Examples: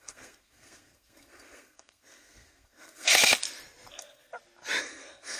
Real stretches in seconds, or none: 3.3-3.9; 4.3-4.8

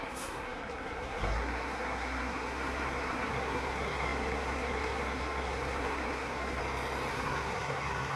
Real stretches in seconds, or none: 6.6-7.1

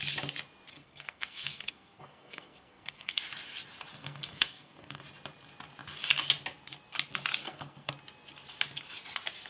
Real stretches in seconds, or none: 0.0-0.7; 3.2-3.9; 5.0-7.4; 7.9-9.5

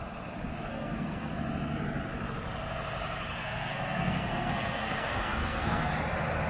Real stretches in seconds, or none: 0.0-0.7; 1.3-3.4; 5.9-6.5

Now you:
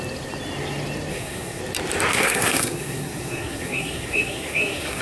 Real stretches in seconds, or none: 0.0-1.1; 1.6-2.1

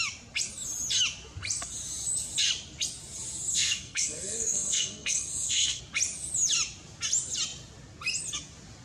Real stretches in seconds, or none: 0.0-3.5; 5.8-8.8

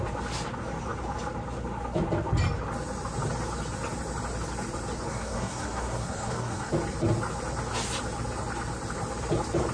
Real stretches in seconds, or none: 0.0-5.1; 6.7-9.7

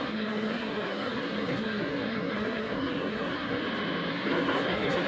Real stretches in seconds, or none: 3.6-4.1